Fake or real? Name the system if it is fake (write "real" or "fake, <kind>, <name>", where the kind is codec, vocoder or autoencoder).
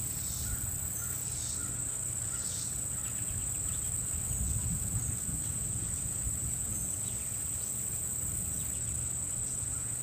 fake, vocoder, Vocos